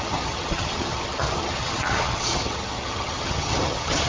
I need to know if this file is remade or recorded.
remade